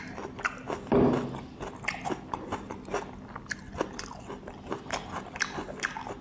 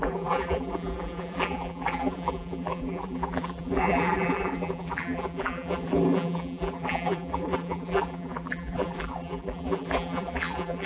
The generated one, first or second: second